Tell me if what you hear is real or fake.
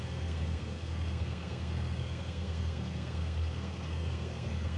fake